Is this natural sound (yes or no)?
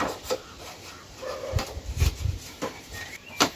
no